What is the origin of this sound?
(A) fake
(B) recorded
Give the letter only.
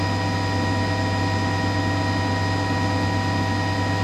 B